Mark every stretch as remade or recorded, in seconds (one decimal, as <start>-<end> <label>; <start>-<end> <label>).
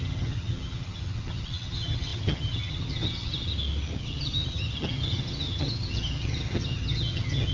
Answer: 0.0-3.5 remade; 3.5-4.0 recorded; 4.0-7.5 remade